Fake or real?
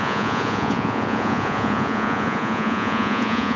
fake